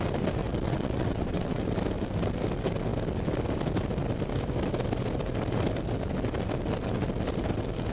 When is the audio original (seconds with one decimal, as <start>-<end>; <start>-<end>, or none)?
0.0-0.4; 1.6-7.9